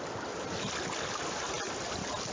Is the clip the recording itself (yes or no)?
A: yes